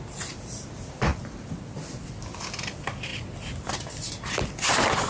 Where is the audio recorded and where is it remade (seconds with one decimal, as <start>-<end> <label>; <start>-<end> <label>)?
0.0-5.1 recorded